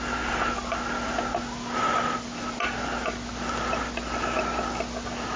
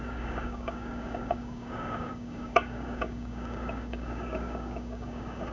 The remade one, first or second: second